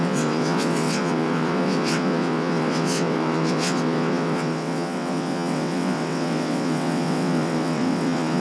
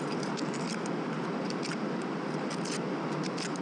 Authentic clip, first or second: second